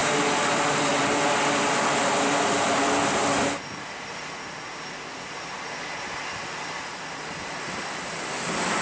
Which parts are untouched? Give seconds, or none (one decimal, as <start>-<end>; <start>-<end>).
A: 0.0-8.8